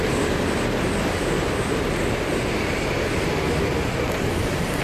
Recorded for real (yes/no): no